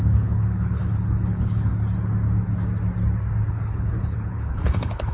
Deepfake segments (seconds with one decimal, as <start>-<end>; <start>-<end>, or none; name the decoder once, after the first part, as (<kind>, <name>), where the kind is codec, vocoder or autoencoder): 0.0-1.7 (codec, HILCodec); 3.5-5.1